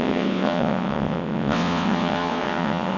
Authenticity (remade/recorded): remade